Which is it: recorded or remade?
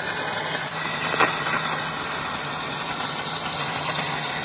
recorded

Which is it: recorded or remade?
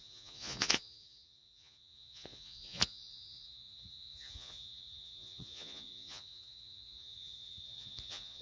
remade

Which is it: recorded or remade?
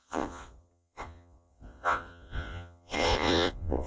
remade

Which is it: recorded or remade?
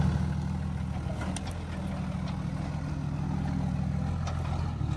recorded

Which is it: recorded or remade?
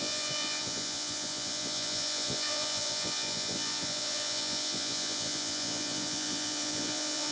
remade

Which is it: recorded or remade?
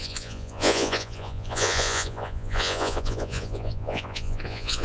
remade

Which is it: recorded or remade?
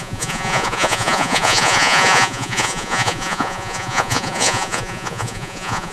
remade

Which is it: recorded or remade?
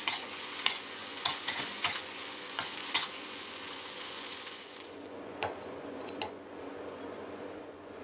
remade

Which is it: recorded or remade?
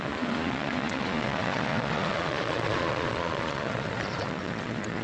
remade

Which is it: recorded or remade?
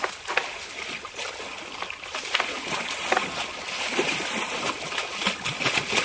recorded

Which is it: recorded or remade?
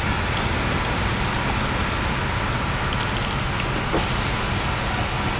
recorded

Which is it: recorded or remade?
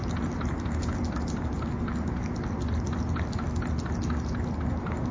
recorded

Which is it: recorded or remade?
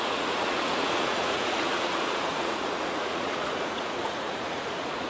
remade